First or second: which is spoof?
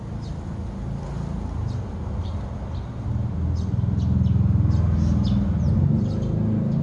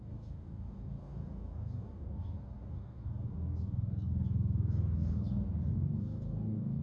second